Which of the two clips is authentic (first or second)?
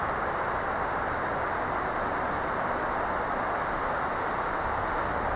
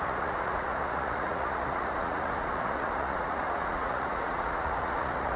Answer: first